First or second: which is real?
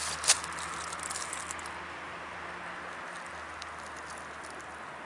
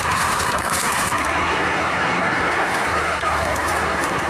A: first